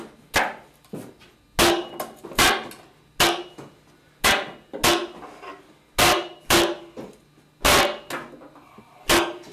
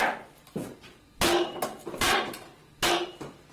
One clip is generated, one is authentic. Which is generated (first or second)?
second